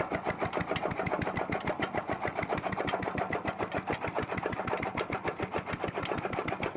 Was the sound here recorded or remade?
recorded